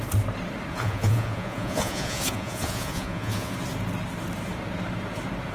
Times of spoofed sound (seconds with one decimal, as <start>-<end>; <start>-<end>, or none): 0.7-3.5